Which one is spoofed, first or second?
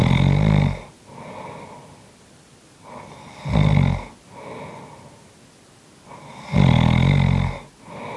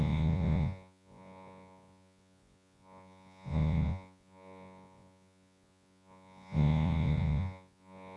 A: second